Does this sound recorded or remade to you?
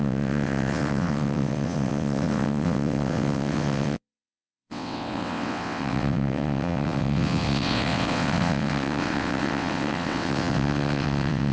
remade